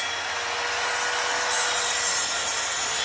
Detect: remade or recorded recorded